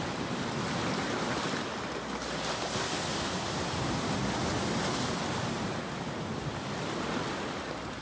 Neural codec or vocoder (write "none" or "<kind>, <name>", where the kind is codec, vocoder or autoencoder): none